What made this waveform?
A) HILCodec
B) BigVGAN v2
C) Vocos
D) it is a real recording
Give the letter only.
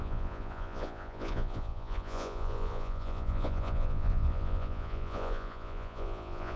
C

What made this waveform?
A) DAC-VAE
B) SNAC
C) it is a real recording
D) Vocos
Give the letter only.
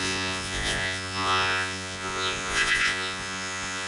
D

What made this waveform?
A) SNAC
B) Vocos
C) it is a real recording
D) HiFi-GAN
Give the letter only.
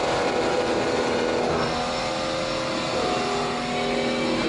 C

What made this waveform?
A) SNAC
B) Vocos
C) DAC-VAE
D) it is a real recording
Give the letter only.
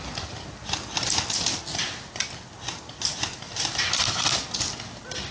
D